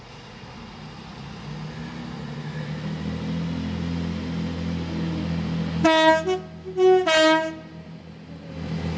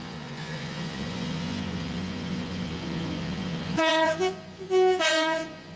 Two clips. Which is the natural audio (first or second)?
first